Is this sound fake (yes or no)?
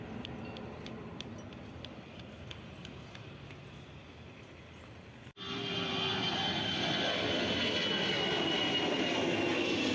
no